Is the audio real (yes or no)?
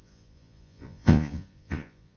no